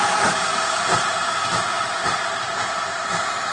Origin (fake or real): real